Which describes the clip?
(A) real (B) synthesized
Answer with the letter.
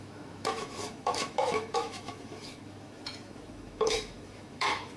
B